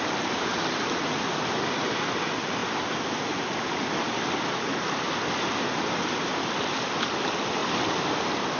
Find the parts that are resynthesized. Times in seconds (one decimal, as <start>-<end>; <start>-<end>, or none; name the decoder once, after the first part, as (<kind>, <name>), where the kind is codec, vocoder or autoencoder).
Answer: none